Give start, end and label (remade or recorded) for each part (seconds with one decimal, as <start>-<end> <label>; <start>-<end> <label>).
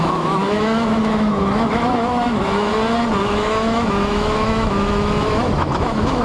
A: 0.0-2.7 remade; 2.7-3.2 recorded; 3.2-6.2 remade